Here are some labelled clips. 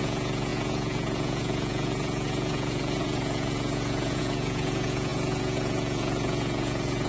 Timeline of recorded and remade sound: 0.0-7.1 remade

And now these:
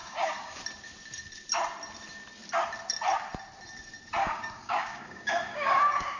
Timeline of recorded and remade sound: 0.0-0.6 remade; 0.6-4.2 recorded; 4.2-6.2 remade

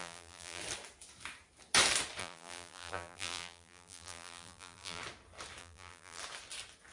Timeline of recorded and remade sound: 0.0-0.6 remade; 0.6-2.2 recorded; 2.2-5.0 remade; 5.0-5.6 recorded; 5.6-6.2 remade; 6.2-6.9 recorded

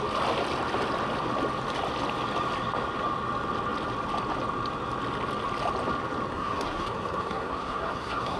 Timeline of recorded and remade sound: 0.0-6.3 recorded; 6.3-8.4 remade